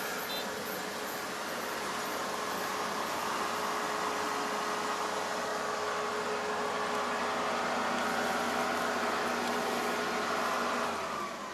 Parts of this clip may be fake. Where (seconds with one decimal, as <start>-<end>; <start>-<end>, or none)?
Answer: none